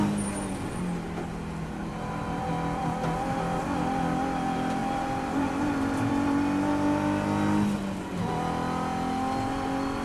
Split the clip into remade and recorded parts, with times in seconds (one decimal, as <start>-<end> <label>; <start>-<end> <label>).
0.0-1.8 recorded; 1.8-2.5 remade; 2.5-4.8 recorded; 4.8-6.1 remade; 6.1-10.0 recorded